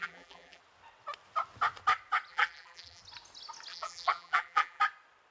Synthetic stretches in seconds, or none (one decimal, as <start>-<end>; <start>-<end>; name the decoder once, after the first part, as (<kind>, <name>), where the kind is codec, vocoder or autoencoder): 0.0-0.6 (vocoder, BigVGAN v2); 2.3-3.0; 3.7-4.8